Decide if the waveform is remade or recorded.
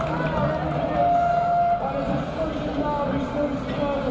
recorded